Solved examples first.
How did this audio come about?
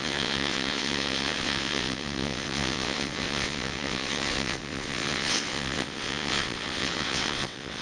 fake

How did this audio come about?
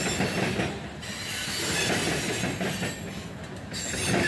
real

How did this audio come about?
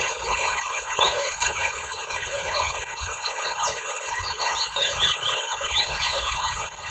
fake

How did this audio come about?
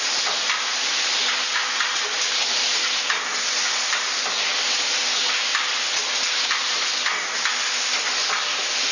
real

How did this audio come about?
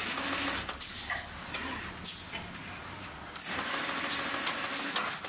real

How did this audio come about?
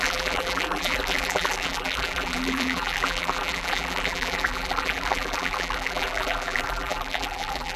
fake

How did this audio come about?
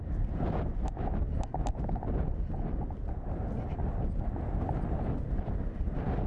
real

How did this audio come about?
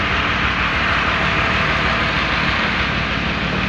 fake